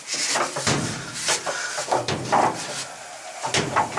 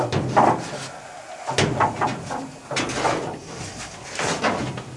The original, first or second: second